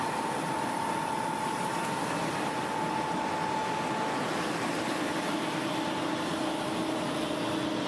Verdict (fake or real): real